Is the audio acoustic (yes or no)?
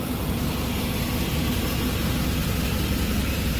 yes